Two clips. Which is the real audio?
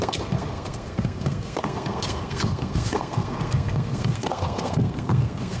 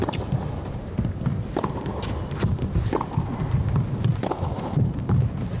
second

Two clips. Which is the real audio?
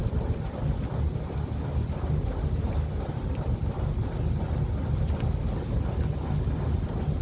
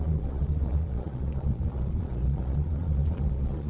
first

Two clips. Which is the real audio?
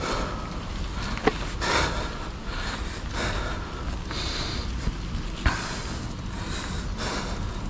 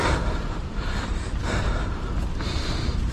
first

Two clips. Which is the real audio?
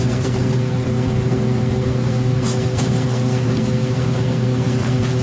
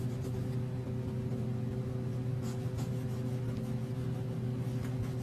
second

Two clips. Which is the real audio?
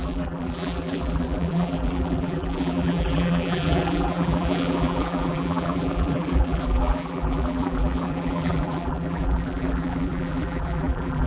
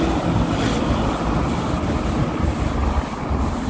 second